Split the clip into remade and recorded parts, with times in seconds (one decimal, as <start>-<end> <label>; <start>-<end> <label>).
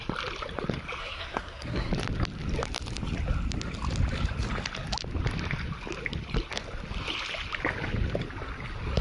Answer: 0.0-1.0 recorded; 1.0-1.9 remade; 1.9-9.0 recorded